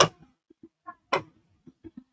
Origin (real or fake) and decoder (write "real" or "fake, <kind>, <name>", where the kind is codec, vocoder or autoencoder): real